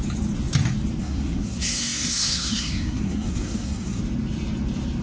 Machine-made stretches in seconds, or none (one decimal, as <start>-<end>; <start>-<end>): 1.0-4.0

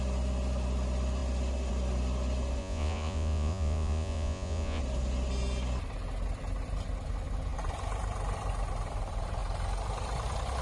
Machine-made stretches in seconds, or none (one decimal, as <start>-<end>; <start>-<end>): 2.6-4.8

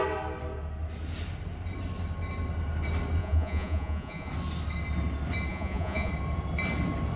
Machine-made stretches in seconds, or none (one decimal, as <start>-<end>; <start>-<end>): 3.2-4.3; 5.5-6.1

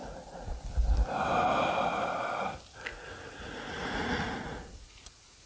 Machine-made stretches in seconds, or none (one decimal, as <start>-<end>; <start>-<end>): 0.0-0.6; 2.9-5.5

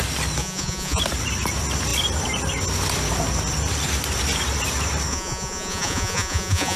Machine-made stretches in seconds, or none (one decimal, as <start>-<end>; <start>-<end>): 0.4-1.0; 5.1-6.8

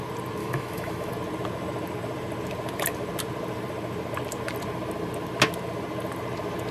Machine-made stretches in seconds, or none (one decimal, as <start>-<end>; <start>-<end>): 0.4-1.1